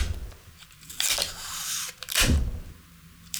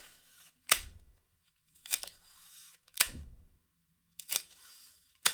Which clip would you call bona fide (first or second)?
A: first